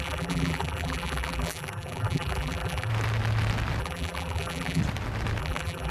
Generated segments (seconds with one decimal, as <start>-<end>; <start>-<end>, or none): 0.0-2.9; 3.8-4.8; 5.4-5.9